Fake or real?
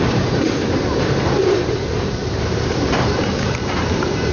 fake